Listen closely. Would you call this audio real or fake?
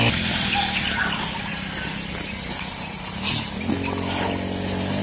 real